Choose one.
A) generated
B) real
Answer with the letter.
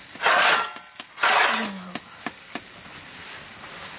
B